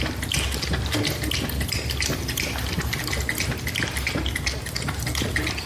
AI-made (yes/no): no